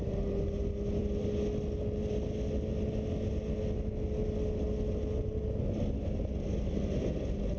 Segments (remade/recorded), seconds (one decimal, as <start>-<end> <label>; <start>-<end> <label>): 0.0-7.6 recorded